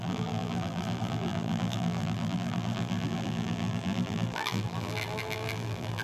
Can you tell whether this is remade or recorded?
remade